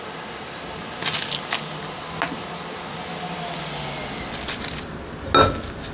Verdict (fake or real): real